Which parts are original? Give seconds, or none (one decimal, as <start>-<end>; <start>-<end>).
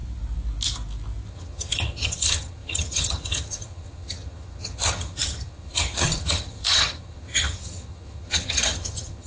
0.0-1.3